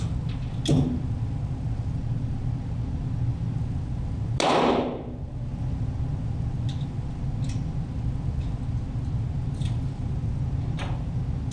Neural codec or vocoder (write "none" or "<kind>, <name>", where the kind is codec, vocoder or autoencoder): none